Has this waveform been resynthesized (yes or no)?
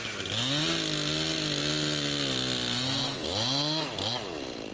no